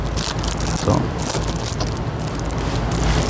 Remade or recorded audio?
recorded